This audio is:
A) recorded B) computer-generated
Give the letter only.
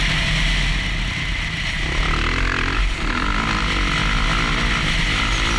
A